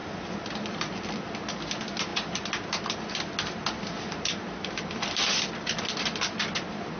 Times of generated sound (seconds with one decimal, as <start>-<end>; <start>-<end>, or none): 0.0-0.9; 2.1-5.8